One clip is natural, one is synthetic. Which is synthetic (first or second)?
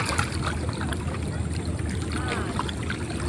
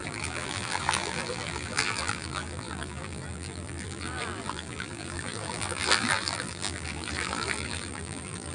second